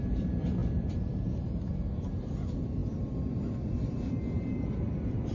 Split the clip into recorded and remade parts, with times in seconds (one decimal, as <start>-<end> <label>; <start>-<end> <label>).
0.0-5.3 recorded

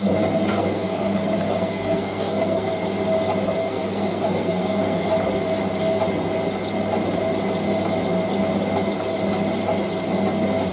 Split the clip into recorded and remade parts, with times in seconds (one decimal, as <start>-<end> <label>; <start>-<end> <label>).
0.0-0.5 recorded; 0.5-2.7 remade; 2.7-3.6 recorded; 3.6-5.1 remade; 5.1-10.7 recorded

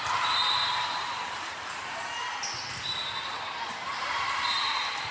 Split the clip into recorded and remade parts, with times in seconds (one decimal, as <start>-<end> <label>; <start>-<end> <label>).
0.0-2.3 remade; 2.3-3.9 recorded; 3.9-5.1 remade

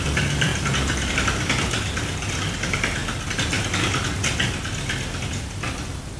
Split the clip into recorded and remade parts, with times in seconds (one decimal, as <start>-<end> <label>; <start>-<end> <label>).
0.0-3.0 remade; 3.0-6.2 recorded

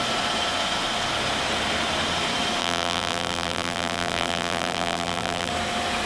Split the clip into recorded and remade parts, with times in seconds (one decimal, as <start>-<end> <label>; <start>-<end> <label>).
0.0-2.6 recorded; 2.6-5.5 remade; 5.5-6.0 recorded

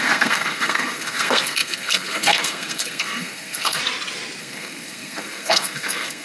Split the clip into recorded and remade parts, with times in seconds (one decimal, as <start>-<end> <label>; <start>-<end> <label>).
0.0-3.8 remade; 3.8-4.4 recorded; 4.4-6.2 remade